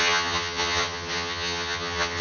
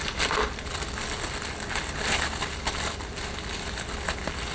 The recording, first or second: second